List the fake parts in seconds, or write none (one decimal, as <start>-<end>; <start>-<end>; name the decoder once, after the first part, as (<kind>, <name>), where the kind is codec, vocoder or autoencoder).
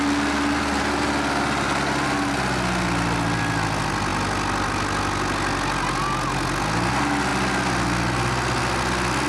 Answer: none